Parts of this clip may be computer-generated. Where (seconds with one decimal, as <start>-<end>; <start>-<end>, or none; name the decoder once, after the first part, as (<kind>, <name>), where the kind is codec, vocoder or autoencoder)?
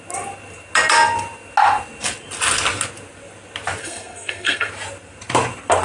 3.8-4.7 (codec, SNAC)